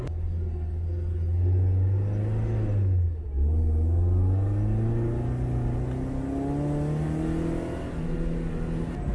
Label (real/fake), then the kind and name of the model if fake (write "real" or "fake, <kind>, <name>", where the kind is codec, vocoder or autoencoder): real